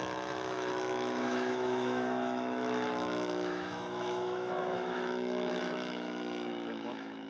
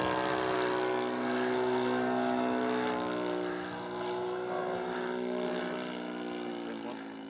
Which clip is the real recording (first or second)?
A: second